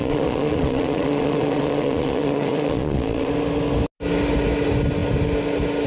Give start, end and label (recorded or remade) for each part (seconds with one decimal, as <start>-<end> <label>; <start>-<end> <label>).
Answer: 0.0-3.3 remade; 3.3-5.9 recorded